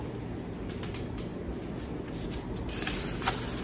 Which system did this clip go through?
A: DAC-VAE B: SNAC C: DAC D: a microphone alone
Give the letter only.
D